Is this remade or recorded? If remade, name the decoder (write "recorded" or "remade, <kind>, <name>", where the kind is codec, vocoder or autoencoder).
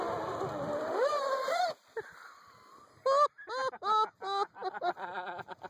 recorded